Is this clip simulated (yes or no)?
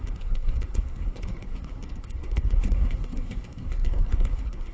yes